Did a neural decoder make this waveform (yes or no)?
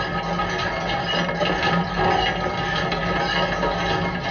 no